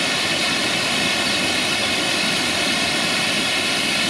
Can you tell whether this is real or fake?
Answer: real